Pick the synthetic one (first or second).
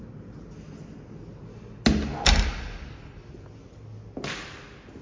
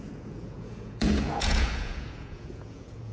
second